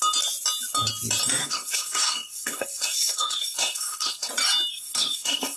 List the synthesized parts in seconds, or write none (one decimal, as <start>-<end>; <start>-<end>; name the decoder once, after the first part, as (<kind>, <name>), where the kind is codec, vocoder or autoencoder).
1.4-4.3 (codec, SNAC); 4.7-5.6